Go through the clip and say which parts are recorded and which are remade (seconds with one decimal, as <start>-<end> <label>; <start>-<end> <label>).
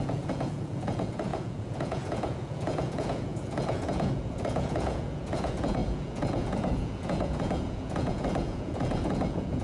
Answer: 0.0-9.6 remade